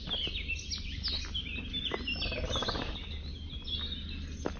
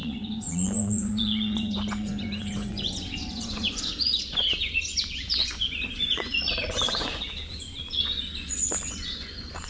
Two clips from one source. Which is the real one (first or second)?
first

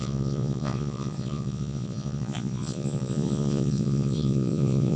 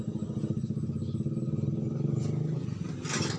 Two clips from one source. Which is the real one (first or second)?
second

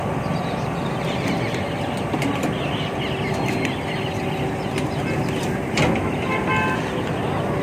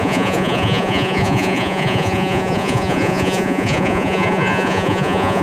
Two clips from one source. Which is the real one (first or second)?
first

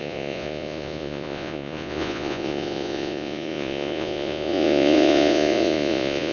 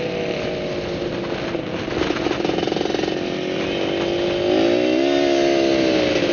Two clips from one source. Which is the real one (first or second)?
second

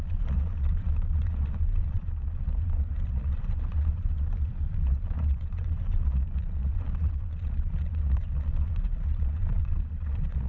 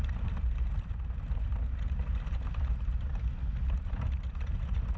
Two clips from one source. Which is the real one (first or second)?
second